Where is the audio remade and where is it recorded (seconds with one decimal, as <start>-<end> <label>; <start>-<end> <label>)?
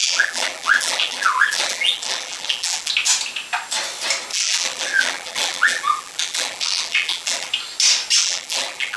0.0-2.9 remade; 2.9-4.3 recorded; 4.3-7.5 remade; 7.5-8.2 recorded; 8.2-9.0 remade